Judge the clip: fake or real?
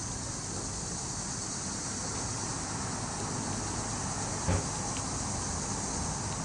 real